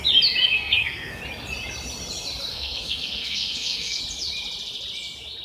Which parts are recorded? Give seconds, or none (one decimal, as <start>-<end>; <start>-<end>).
0.0-0.4; 1.2-2.5; 4.0-5.4